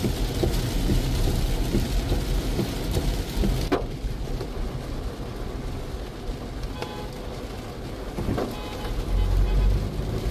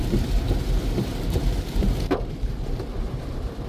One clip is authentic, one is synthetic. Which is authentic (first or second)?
first